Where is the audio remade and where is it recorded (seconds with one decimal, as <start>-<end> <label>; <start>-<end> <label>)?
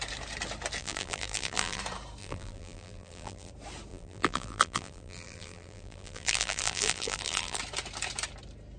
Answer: 0.0-0.8 recorded; 0.8-1.8 remade; 1.8-2.2 recorded; 2.2-3.5 remade; 3.5-3.9 recorded; 3.9-7.6 remade; 7.6-8.8 recorded